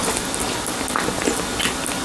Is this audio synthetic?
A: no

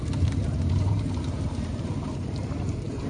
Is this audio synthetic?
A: yes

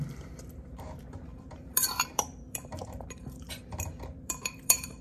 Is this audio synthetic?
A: yes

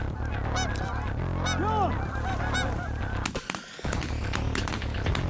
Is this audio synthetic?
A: no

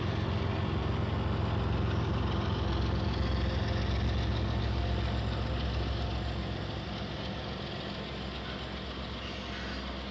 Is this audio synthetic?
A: no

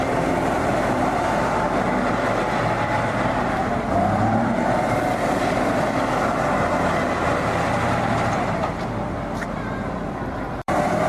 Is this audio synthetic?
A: yes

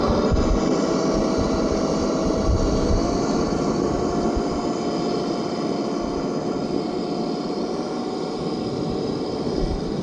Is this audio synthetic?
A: no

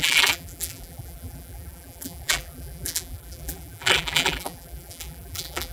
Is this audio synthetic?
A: yes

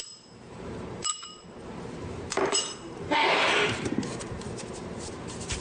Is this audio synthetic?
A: yes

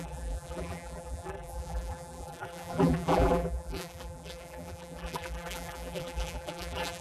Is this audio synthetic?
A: yes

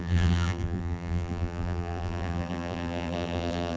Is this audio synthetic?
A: yes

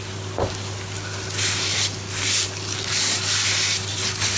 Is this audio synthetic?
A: no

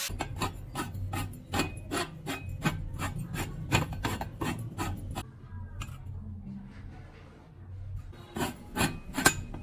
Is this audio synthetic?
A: no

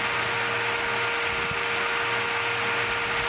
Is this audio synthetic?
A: no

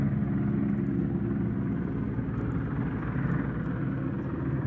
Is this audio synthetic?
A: no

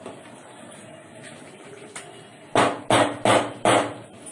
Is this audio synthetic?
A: no